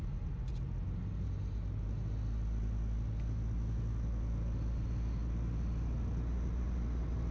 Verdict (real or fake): real